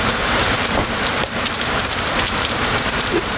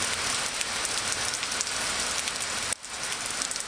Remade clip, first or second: first